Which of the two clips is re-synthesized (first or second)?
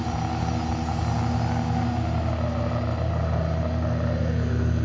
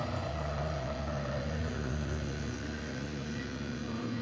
second